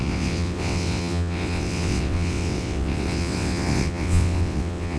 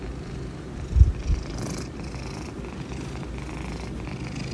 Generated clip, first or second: first